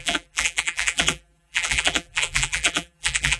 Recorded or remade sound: remade